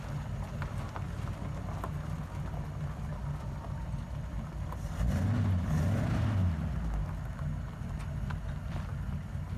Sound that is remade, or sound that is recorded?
recorded